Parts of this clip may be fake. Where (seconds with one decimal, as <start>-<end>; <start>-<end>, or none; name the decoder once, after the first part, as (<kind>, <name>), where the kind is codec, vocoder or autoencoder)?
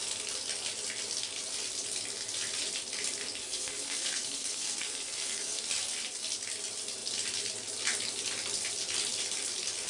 3.4-5.6 (codec, SNAC)